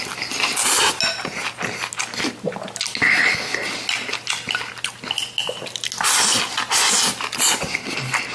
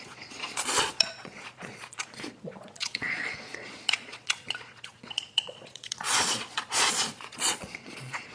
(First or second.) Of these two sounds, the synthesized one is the second